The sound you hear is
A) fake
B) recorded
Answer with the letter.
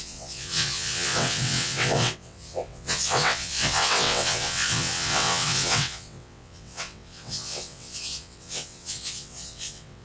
A